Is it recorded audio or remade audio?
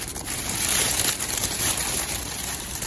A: remade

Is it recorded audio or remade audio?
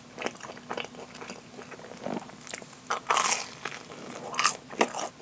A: recorded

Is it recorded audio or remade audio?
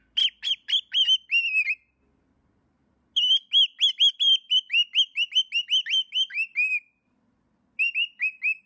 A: recorded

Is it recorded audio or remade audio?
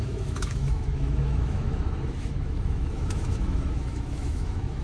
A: remade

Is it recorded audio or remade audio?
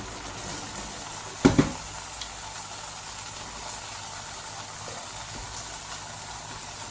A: recorded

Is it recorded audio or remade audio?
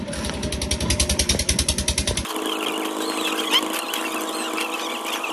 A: recorded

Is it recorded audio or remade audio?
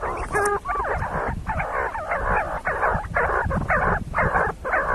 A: recorded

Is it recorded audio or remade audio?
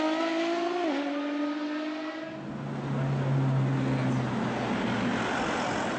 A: recorded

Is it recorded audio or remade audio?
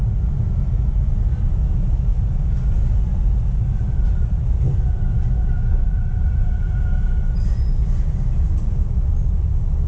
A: recorded